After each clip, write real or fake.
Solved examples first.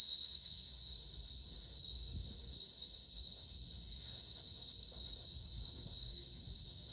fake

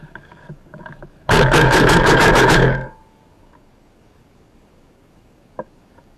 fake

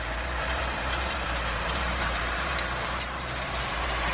fake